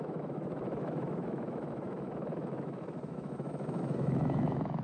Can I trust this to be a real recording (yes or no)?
no